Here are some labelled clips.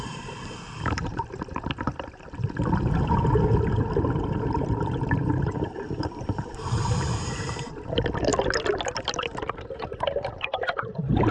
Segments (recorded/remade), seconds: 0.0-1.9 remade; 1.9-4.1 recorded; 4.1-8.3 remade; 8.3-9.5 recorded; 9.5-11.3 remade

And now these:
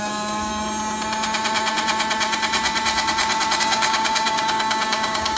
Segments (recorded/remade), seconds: 0.0-0.5 remade; 0.5-3.6 recorded; 3.6-5.4 remade